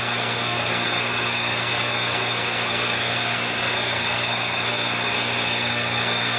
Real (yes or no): no